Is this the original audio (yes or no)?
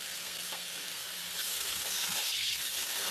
no